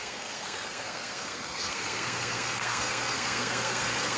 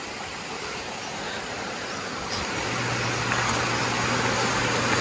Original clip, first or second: second